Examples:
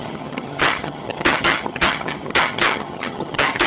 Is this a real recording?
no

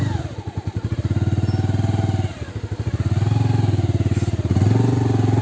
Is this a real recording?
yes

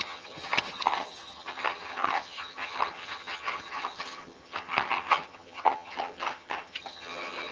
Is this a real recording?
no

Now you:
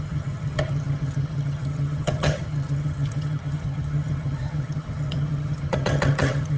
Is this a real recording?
no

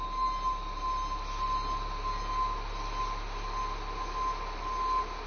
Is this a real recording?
yes